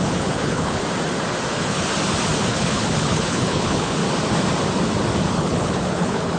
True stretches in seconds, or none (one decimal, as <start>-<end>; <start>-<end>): 0.8-1.5; 1.9-2.5; 4.0-5.3